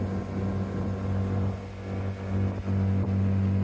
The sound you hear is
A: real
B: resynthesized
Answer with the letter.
A